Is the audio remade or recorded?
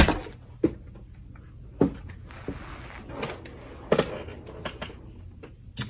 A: recorded